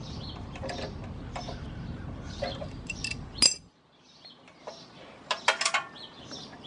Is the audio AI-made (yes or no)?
no